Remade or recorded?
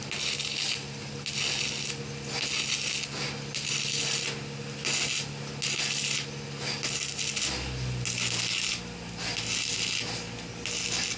recorded